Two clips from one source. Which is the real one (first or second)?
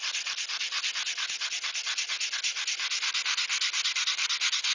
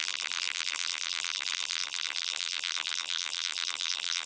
first